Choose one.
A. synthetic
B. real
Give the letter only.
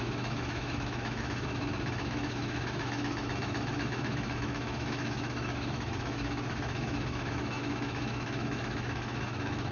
A